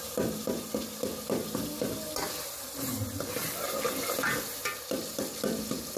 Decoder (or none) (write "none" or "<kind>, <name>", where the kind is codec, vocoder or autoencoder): none